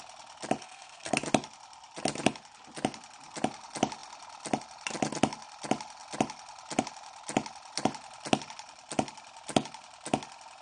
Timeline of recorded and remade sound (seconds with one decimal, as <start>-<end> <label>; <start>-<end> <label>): 0.0-0.6 recorded; 0.6-1.1 remade; 1.1-10.6 recorded